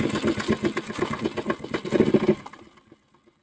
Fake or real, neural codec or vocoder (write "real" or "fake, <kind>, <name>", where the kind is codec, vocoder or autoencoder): real